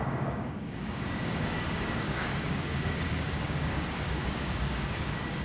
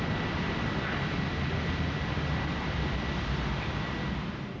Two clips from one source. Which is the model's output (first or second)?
first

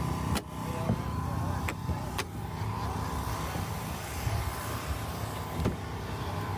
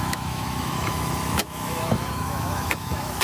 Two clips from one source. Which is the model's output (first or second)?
second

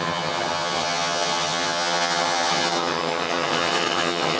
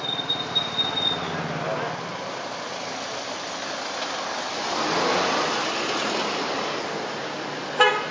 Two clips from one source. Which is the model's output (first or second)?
first